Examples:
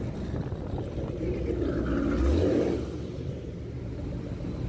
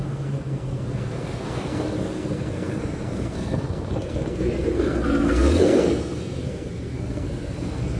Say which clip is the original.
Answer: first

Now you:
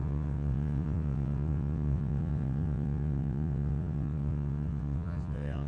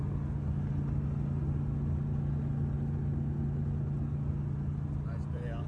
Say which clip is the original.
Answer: second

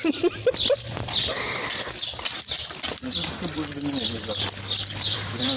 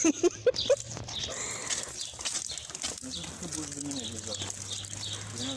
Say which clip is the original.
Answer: second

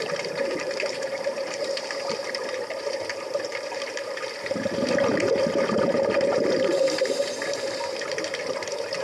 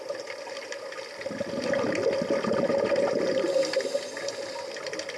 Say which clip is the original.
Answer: second